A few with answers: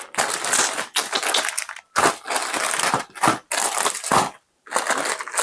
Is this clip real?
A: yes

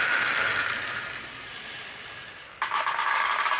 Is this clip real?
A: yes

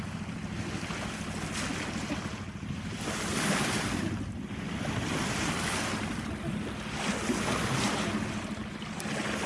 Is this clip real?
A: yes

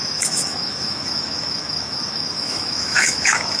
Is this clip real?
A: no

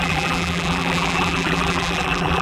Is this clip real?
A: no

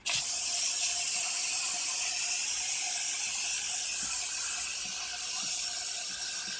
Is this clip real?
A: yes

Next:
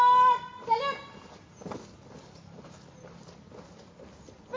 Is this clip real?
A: yes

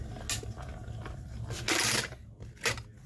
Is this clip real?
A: yes